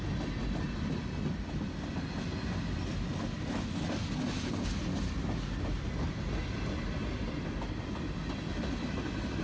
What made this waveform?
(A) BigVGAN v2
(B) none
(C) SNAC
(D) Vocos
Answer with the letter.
B